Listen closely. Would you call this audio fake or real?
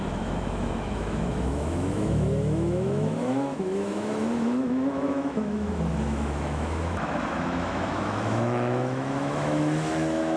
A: fake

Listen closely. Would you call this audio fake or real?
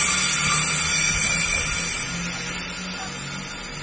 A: real